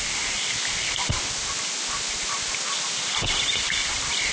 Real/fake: real